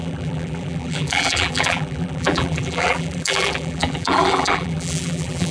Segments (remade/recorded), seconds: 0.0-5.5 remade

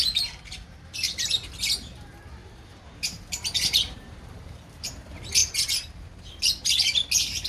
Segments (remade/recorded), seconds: 0.0-2.4 recorded; 2.4-4.9 remade; 4.9-7.5 recorded